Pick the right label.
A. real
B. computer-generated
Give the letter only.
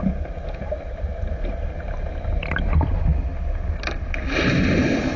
A